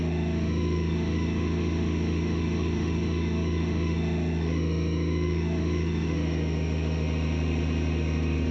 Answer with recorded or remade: remade